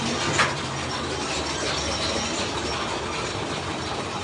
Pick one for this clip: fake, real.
real